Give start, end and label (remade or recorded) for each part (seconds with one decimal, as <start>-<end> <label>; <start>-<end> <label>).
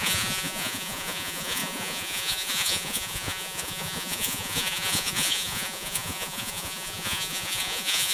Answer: 0.0-8.1 remade